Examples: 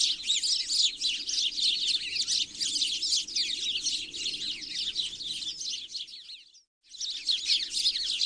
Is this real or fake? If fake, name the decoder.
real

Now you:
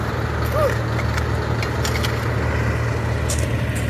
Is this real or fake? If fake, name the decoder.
real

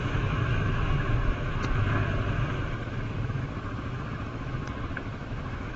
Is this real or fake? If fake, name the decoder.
fake, autoencoder, DAC-VAE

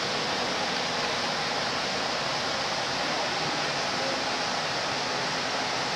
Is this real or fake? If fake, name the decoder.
real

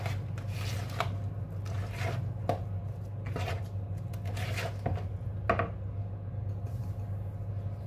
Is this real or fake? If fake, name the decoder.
real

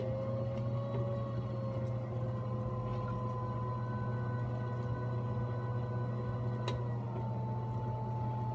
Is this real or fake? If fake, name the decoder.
real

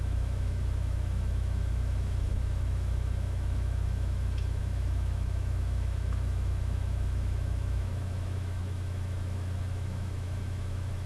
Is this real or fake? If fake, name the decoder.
fake, autoencoder, DAC-VAE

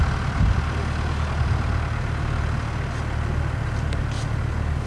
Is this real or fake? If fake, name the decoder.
real